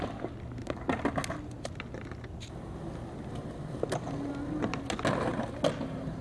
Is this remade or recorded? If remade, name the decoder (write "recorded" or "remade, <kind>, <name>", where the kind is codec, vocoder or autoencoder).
recorded